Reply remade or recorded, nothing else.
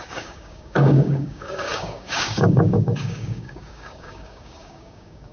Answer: remade